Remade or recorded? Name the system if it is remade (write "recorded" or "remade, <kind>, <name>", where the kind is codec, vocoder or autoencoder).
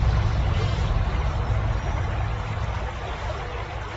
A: recorded